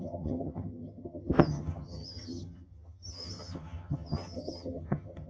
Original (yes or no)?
no